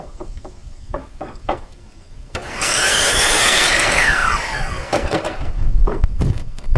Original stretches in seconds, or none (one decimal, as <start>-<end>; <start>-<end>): none